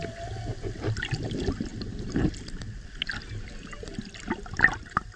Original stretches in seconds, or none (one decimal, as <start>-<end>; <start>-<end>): 0.0-5.2